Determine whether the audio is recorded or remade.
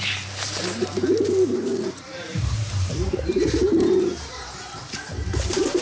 remade